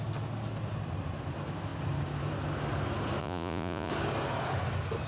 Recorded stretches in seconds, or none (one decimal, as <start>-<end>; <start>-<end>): 0.0-3.2; 3.9-5.1